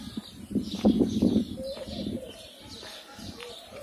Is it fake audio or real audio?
real